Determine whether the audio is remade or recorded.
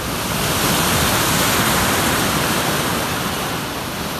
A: recorded